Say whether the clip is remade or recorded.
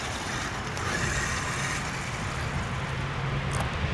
recorded